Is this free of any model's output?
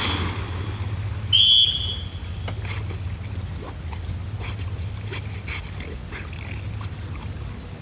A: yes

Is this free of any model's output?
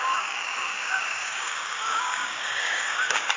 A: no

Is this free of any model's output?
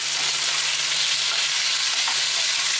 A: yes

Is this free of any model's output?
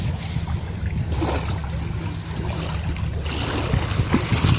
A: yes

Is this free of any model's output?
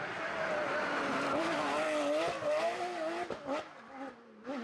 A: yes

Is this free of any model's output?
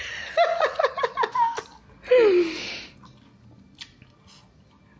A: yes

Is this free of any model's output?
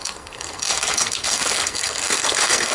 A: no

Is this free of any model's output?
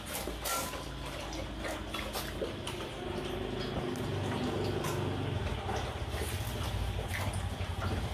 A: yes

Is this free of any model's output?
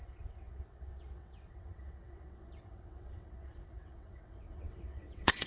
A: no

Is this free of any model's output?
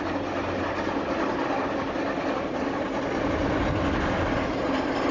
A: yes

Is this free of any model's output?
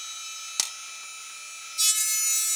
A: yes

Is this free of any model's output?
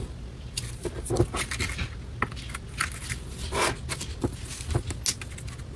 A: yes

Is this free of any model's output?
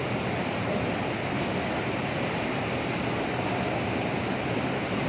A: yes